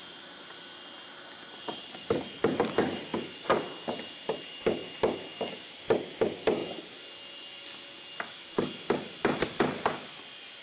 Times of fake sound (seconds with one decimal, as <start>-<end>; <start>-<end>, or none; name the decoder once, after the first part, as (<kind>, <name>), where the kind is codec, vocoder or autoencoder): 0.0-4.8 (vocoder, BigVGAN v2); 5.5-6.6